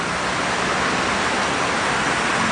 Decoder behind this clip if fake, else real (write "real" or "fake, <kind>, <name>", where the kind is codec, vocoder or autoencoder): real